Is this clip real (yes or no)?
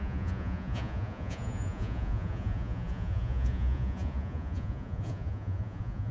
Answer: no